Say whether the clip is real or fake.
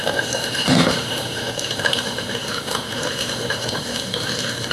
fake